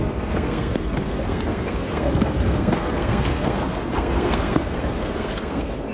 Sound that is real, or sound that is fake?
fake